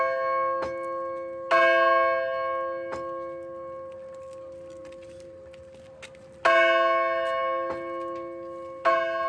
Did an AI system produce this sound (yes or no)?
no